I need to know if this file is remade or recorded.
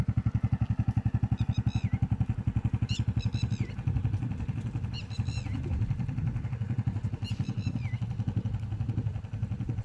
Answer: recorded